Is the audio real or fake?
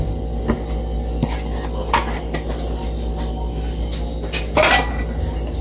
real